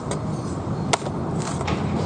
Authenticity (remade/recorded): recorded